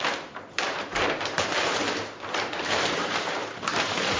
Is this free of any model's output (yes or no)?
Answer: no